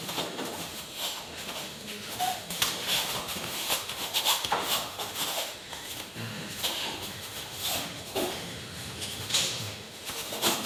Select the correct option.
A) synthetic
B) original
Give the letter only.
A